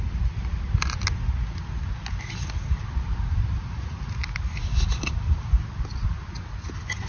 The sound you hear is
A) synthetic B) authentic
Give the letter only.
B